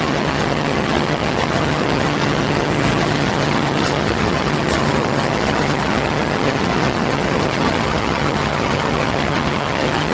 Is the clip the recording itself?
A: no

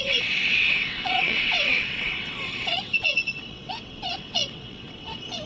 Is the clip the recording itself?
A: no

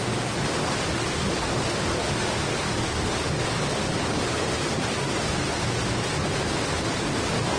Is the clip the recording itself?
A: yes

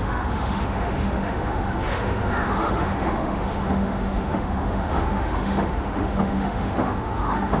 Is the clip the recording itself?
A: no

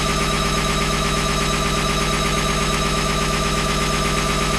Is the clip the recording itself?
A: no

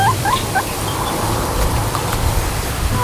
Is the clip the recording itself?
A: no